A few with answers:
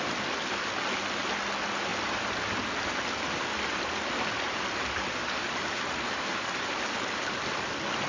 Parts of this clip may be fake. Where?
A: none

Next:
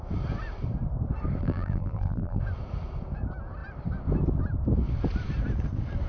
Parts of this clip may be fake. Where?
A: 1.4-2.4 (vocoder, BigVGAN v2)

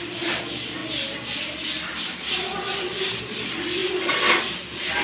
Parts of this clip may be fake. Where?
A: 0.0-0.8 (vocoder, BigVGAN v2); 2.0-5.0

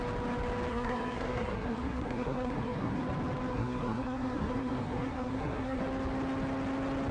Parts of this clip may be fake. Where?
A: 0.7-3.0 (codec, SNAC); 3.5-5.8

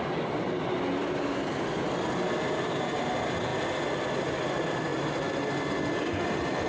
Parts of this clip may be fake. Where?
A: none